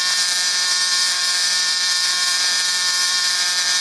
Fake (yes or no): yes